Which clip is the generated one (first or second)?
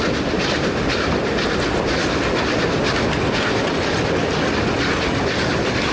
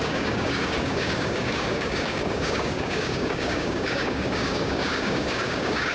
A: second